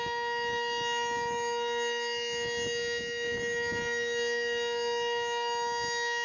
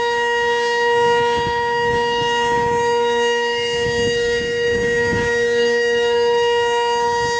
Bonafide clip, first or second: first